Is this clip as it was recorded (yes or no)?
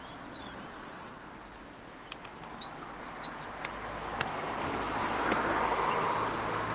yes